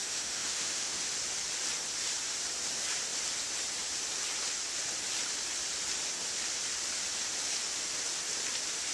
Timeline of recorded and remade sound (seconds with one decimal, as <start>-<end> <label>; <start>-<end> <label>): 0.0-1.0 remade; 1.0-8.9 recorded

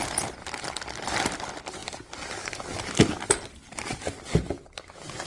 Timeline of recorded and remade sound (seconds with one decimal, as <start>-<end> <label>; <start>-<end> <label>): 0.0-5.3 recorded

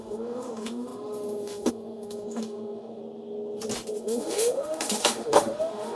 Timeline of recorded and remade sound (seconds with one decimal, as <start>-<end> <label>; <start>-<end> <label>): 0.0-3.0 remade; 3.0-4.0 recorded; 4.0-5.9 remade

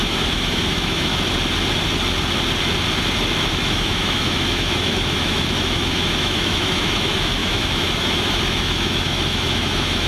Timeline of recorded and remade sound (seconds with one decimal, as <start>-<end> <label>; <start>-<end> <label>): 0.0-1.1 remade; 1.1-3.5 recorded; 3.5-10.1 remade

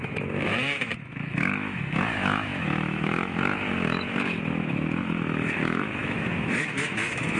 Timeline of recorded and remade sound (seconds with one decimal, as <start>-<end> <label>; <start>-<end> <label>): 0.0-7.4 remade